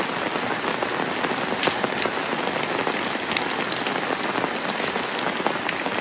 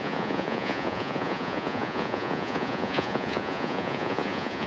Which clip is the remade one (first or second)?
second